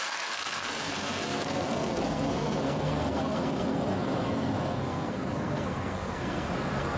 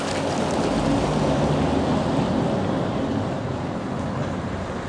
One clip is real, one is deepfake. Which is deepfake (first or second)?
first